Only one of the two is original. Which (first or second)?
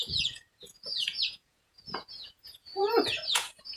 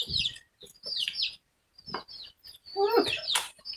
second